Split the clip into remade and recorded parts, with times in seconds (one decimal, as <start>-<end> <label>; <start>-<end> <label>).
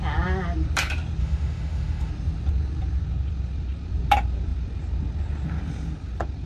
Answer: 0.0-1.2 recorded; 1.2-2.1 remade; 2.1-6.5 recorded